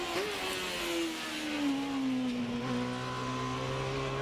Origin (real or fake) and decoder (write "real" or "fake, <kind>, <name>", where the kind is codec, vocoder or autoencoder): real